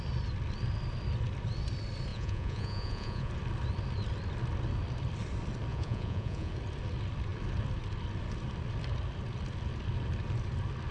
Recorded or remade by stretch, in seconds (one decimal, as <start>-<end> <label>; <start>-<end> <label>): 0.0-2.1 recorded; 2.1-3.3 remade; 3.3-5.7 recorded; 5.7-6.5 remade; 6.5-10.9 recorded